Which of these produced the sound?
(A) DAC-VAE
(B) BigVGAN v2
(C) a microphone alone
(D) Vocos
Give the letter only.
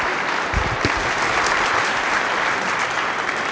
C